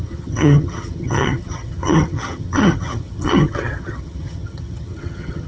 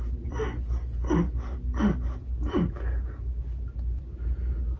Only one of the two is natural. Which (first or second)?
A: second